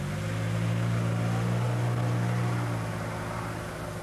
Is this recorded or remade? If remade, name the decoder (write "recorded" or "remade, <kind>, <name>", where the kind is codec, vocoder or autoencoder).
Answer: recorded